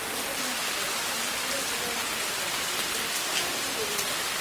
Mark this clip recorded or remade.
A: recorded